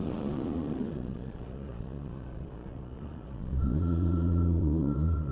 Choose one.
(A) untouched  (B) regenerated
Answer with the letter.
B